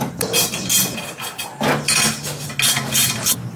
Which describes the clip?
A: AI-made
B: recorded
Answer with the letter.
B